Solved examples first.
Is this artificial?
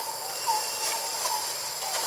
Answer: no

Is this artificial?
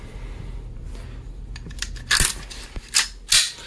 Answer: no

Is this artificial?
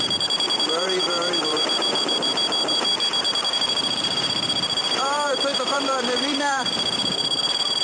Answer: yes